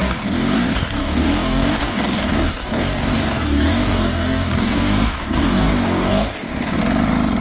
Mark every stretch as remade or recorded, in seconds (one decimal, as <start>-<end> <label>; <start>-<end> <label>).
0.0-6.8 remade; 6.8-7.4 recorded